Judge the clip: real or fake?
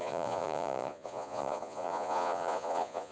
fake